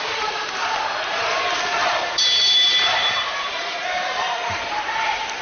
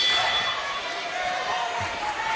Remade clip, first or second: first